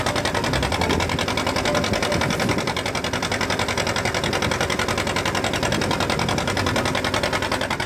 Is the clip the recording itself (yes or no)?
yes